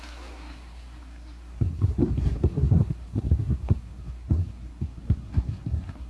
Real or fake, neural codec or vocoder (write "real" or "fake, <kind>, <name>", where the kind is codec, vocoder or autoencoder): fake, codec, SNAC